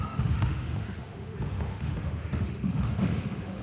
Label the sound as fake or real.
fake